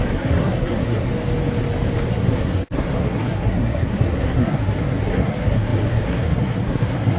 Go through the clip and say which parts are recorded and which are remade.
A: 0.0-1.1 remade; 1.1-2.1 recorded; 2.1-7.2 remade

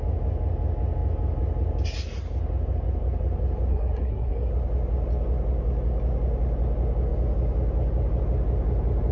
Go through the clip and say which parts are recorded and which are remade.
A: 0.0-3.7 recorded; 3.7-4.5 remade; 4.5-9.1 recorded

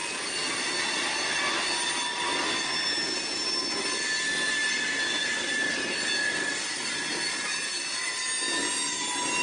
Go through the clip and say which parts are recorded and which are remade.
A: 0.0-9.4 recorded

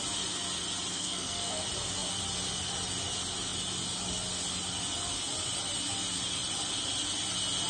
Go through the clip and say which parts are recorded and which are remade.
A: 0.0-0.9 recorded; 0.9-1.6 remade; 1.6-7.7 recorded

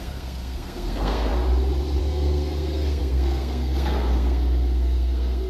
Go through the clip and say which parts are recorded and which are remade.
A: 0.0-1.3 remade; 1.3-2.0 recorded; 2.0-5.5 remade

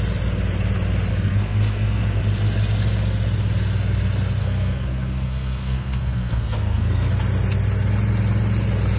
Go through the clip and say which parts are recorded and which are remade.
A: 0.0-1.1 recorded; 1.1-2.2 remade; 2.2-4.4 recorded; 4.4-7.1 remade; 7.1-9.0 recorded